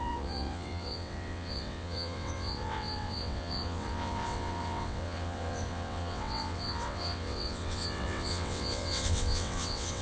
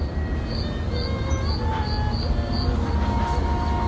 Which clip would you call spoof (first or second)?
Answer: first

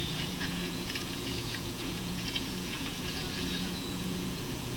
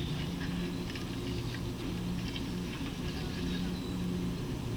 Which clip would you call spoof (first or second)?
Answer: first